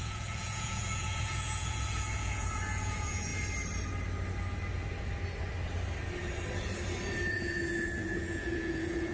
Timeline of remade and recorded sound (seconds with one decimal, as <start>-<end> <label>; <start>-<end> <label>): 0.0-3.3 remade; 3.3-7.3 recorded; 7.3-9.1 remade